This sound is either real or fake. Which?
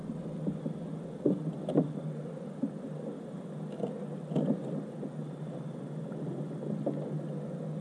real